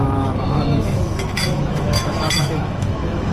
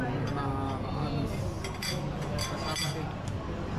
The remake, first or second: first